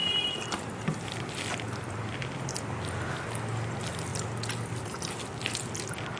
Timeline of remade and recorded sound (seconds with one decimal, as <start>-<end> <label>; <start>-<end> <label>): 0.0-2.6 remade; 2.6-6.2 recorded